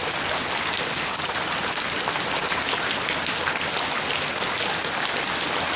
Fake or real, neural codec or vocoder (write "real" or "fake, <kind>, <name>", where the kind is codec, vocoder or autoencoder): real